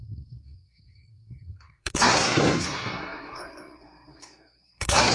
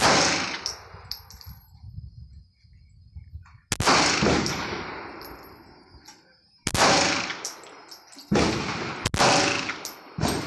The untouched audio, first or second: second